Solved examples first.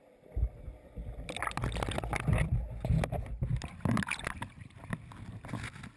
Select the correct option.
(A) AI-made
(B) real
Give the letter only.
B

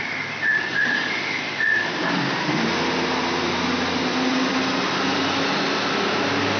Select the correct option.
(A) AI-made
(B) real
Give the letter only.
B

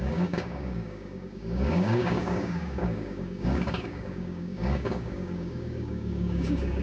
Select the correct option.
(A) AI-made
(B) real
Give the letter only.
A